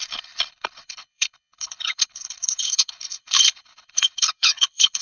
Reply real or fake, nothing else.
fake